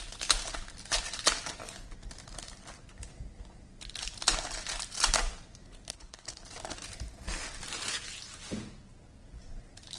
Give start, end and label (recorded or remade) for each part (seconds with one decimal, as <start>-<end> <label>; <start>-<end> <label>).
0.0-5.9 recorded; 5.9-6.4 remade; 6.4-10.0 recorded

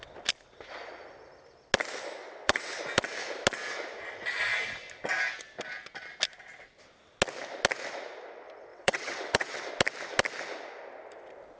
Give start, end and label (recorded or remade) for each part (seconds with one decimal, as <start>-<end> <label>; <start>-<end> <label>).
0.0-2.2 recorded; 2.2-2.8 remade; 2.8-8.7 recorded; 8.7-9.7 remade; 9.7-11.6 recorded

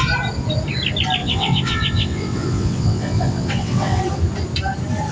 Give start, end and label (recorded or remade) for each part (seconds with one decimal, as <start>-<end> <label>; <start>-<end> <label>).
0.0-1.2 recorded; 1.2-4.0 remade; 4.0-5.1 recorded

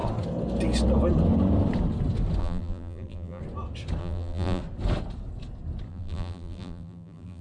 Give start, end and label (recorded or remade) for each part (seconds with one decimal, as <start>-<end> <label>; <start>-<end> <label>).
0.0-2.4 recorded; 2.4-3.4 remade; 3.4-4.0 recorded; 4.0-4.6 remade; 4.6-5.9 recorded; 5.9-7.4 remade

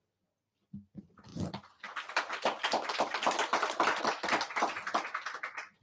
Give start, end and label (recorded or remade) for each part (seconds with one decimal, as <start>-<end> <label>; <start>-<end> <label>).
0.0-5.8 recorded

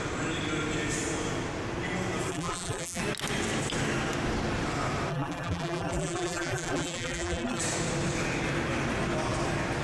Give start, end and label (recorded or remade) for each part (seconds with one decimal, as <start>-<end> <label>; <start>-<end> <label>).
0.0-2.3 recorded; 2.3-3.0 remade; 3.0-5.1 recorded; 5.1-7.6 remade; 7.6-9.8 recorded

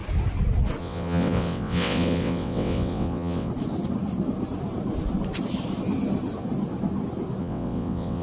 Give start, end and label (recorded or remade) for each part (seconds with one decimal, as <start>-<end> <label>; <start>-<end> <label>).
0.0-0.8 recorded; 0.8-3.5 remade; 3.5-7.4 recorded; 7.4-8.2 remade

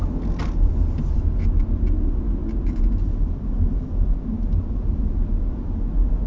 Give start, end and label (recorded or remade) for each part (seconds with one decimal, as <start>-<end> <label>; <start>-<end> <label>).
0.0-6.3 recorded